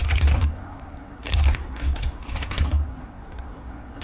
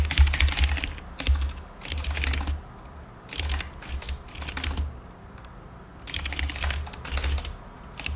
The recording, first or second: second